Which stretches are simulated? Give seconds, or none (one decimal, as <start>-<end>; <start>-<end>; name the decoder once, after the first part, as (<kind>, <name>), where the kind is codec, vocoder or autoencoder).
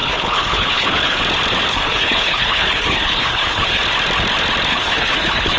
0.0-1.2 (codec, HILCodec); 1.7-3.8; 4.7-5.6